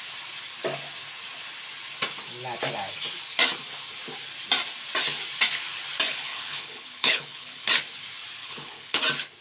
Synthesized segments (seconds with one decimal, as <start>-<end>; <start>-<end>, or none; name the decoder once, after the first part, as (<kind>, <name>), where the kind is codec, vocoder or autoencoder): 6.1-7.7 (codec, HILCodec); 8.4-9.0